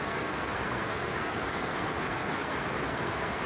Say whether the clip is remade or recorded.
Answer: remade